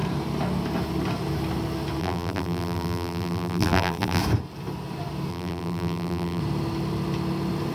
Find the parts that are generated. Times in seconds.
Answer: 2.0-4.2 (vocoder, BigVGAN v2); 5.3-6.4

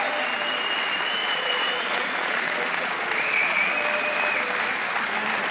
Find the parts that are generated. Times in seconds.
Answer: 1.2-3.7 (vocoder, Vocos)

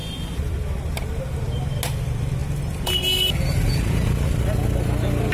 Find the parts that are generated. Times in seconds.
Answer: none

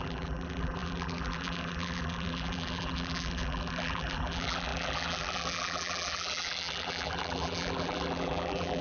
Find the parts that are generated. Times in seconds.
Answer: 0.0-8.8 (vocoder, BigVGAN v2)